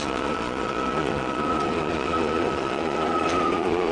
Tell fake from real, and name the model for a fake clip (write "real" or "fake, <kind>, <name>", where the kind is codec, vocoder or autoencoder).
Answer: fake, vocoder, Vocos